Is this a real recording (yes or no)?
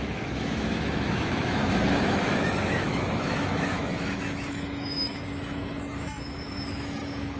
no